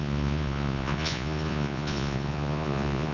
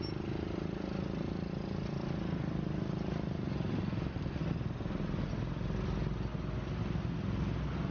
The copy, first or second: first